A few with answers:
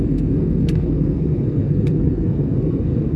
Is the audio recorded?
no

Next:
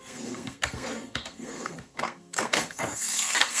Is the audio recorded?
no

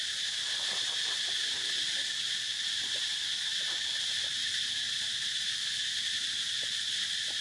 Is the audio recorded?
yes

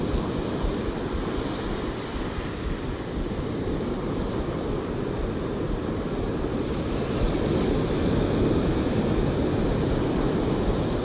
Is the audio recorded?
yes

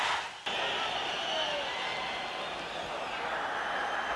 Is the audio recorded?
yes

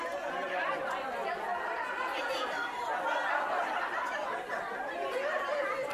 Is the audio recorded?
yes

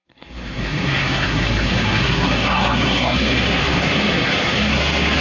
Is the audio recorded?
no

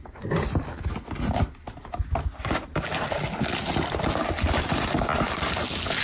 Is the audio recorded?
yes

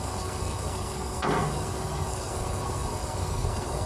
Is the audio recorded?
no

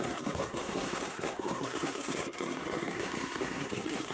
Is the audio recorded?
no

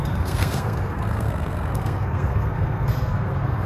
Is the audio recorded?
no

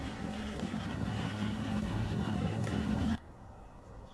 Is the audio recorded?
no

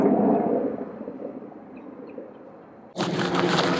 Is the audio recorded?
yes